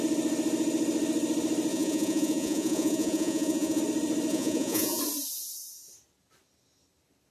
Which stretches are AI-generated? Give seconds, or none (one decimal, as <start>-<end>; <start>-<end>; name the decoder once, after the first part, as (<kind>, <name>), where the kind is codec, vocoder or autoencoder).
1.7-3.8 (vocoder, Vocos); 4.3-5.0